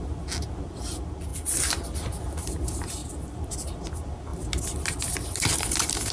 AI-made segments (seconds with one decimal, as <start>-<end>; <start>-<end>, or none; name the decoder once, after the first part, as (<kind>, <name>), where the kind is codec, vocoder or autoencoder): 3.0-3.8 (vocoder, BigVGAN v2)